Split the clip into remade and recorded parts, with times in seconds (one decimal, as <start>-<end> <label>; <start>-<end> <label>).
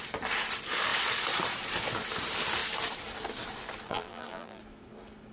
0.0-3.9 recorded; 3.9-4.6 remade; 4.6-5.3 recorded